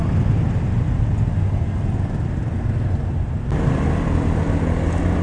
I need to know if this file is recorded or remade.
recorded